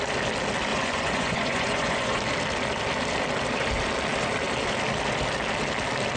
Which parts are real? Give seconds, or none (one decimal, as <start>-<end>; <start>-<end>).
0.0-0.7; 2.2-6.2